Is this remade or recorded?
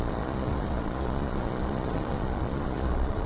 remade